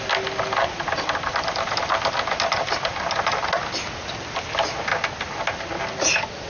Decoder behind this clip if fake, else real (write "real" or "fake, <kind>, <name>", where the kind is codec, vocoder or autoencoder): real